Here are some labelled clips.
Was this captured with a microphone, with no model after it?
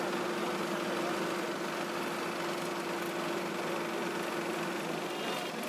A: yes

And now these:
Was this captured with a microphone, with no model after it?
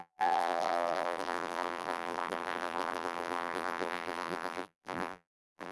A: no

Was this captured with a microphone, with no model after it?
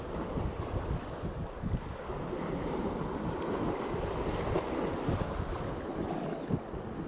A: yes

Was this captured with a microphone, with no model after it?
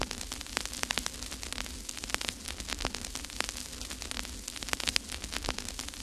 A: yes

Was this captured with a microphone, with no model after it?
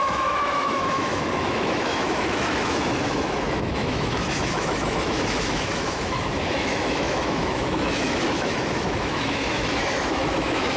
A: no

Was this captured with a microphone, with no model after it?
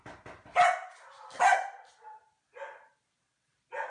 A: yes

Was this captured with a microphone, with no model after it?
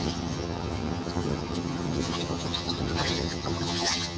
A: no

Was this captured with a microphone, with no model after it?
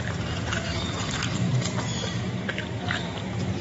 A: no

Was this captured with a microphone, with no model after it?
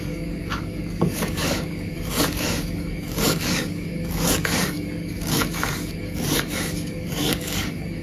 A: no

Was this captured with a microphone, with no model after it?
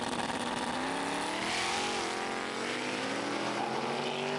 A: yes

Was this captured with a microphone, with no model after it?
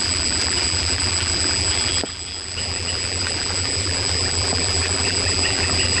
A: no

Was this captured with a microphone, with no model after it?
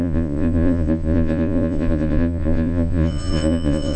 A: no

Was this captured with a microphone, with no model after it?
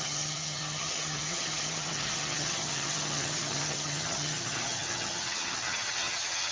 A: no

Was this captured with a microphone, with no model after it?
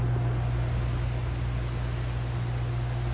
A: yes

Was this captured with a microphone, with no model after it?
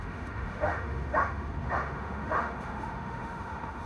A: no